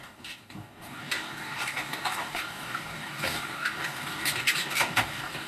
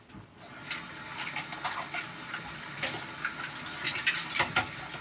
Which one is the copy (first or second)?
first